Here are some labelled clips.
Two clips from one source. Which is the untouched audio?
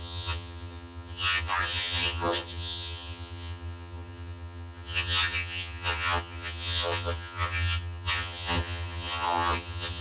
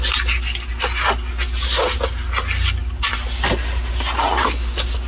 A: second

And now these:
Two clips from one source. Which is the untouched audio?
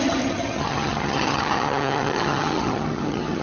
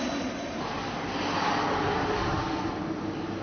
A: second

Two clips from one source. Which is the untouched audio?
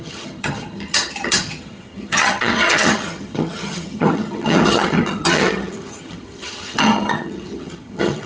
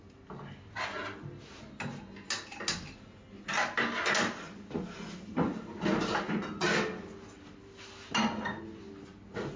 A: second